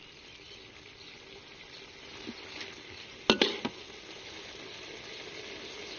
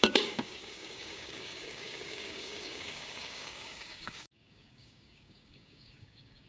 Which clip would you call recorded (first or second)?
first